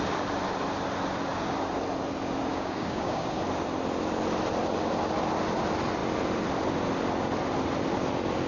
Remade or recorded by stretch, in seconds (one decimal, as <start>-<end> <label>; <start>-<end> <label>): 0.0-2.5 recorded; 2.5-3.4 remade; 3.4-8.5 recorded